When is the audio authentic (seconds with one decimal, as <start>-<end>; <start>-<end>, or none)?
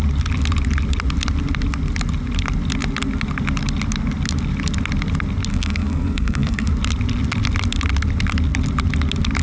0.0-5.5; 6.7-9.4